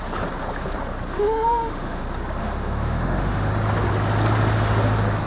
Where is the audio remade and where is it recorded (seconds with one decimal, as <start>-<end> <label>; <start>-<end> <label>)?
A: 0.0-1.1 recorded; 1.1-2.0 remade; 2.0-2.4 recorded; 2.4-3.5 remade; 3.5-5.3 recorded

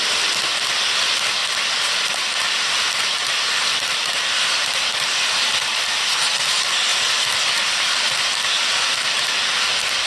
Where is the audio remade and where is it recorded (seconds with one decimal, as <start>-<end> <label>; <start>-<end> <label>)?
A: 0.0-3.2 recorded; 3.2-5.1 remade; 5.1-6.9 recorded; 6.9-9.1 remade; 9.1-10.1 recorded

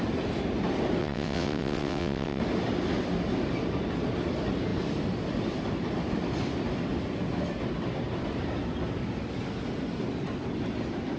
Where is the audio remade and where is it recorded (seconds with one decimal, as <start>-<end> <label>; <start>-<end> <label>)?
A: 0.0-1.0 recorded; 1.0-2.4 remade; 2.4-11.2 recorded

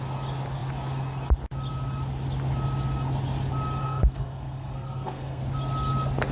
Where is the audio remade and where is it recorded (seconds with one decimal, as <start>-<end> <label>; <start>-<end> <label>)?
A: 0.0-3.8 recorded; 3.8-5.4 remade; 5.4-6.3 recorded

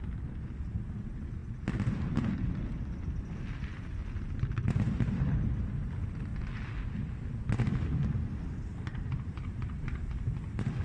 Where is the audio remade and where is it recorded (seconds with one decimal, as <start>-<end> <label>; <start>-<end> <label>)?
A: 0.0-8.9 recorded; 8.9-10.1 remade; 10.1-10.8 recorded